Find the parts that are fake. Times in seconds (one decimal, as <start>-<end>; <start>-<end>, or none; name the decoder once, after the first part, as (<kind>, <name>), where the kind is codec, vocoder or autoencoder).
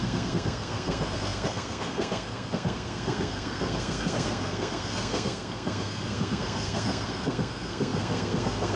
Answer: 0.0-8.8 (codec, SNAC)